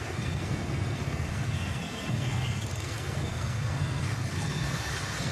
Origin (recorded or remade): remade